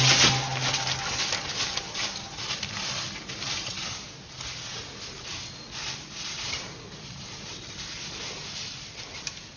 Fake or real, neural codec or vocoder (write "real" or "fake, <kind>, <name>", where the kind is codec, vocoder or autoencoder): real